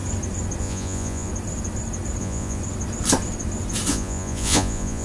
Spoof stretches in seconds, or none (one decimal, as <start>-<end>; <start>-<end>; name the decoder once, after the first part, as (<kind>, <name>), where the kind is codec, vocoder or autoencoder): 0.6-1.3 (vocoder, Vocos); 2.2-2.6; 3.9-5.0